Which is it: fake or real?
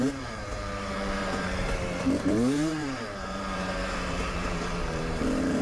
fake